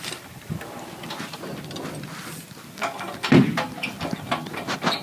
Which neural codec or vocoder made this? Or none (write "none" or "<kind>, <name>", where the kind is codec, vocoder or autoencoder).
none